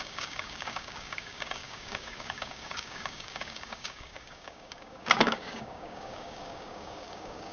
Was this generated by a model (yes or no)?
yes